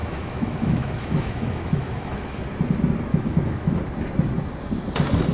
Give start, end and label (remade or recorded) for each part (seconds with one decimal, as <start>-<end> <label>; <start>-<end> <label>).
0.0-2.4 remade; 2.4-3.1 recorded; 3.1-3.8 remade; 3.8-5.3 recorded